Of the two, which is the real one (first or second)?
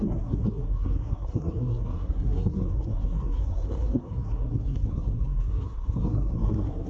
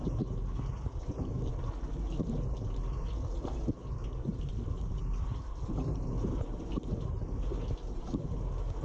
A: second